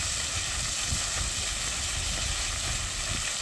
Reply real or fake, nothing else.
real